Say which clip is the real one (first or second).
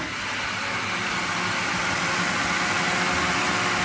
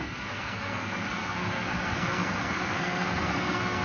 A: first